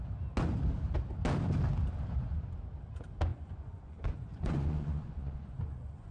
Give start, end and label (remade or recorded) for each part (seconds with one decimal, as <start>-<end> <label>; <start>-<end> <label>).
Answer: 0.0-3.3 recorded; 3.3-6.1 remade